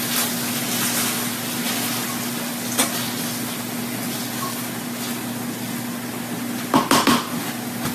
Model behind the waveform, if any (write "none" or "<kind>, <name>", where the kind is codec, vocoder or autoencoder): none